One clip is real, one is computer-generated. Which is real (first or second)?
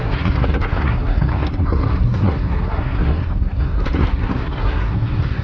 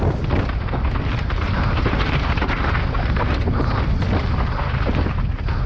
second